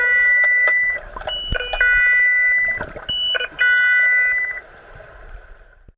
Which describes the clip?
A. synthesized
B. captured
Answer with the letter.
B